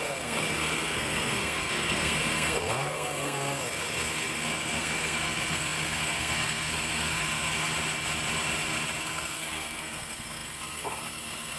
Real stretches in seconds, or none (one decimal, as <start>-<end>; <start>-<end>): 7.7-9.0